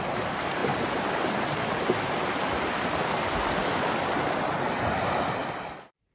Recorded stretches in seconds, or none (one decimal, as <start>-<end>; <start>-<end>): 0.0-6.1